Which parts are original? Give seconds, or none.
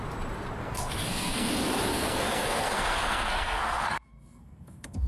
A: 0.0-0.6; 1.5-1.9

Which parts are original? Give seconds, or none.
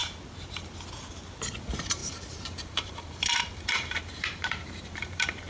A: 0.0-1.6